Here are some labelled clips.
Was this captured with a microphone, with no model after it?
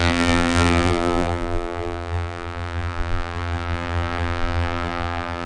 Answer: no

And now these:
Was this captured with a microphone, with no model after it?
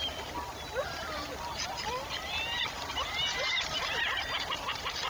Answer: yes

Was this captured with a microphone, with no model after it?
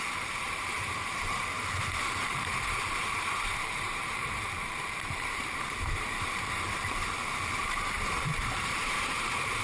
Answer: no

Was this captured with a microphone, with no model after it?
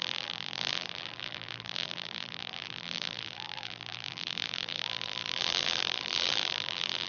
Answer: no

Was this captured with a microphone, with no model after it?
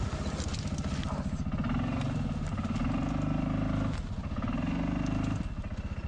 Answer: yes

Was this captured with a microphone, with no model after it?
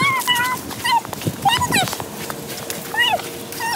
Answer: yes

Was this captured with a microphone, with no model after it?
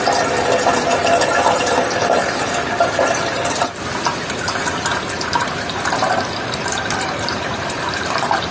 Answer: no